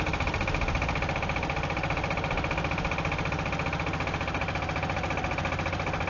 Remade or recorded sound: recorded